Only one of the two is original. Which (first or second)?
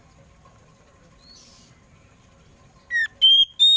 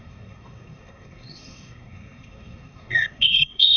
first